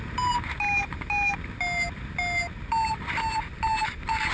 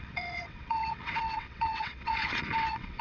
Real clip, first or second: first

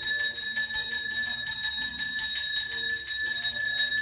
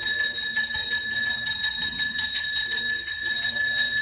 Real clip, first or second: first